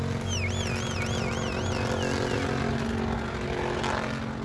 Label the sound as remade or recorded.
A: recorded